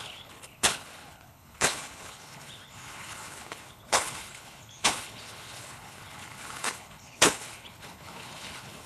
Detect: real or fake fake